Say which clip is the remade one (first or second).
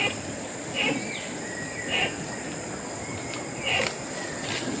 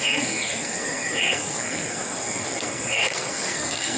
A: second